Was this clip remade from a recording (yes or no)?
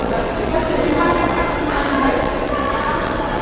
yes